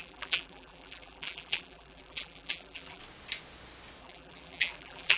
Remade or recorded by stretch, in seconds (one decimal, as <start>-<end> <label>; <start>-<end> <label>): 0.0-3.0 remade; 3.0-4.0 recorded; 4.0-5.2 remade